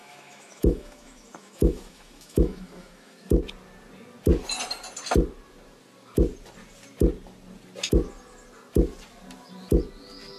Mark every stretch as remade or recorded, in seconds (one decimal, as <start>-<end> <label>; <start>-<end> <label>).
0.0-3.3 remade; 3.3-10.4 recorded

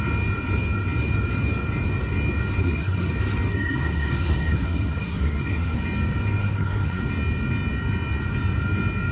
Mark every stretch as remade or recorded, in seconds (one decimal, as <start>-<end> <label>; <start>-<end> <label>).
0.0-2.6 recorded; 2.6-3.1 remade; 3.1-3.5 recorded; 3.5-5.8 remade; 5.8-6.4 recorded; 6.4-7.0 remade; 7.0-9.1 recorded

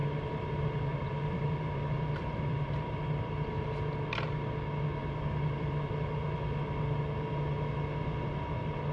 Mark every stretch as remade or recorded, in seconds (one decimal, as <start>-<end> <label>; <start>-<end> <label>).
0.0-3.5 remade; 3.5-5.0 recorded; 5.0-6.6 remade; 6.6-8.9 recorded

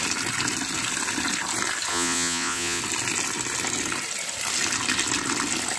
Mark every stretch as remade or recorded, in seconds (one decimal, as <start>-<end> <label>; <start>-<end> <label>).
0.0-1.9 recorded; 1.9-2.8 remade; 2.8-5.8 recorded

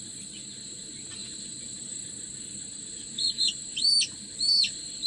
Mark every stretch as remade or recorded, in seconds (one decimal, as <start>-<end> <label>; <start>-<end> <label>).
0.0-1.2 recorded; 1.2-1.8 remade; 1.8-2.8 recorded; 2.8-5.1 remade

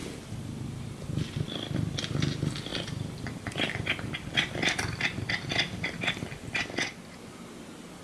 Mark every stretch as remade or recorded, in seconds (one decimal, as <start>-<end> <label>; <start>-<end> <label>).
0.0-2.0 remade; 2.0-2.7 recorded; 2.7-6.1 remade; 6.1-8.0 recorded

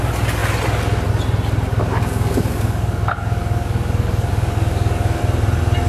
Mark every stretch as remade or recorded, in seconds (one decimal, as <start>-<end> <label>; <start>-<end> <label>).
0.0-1.7 recorded; 1.7-5.2 remade; 5.2-5.9 recorded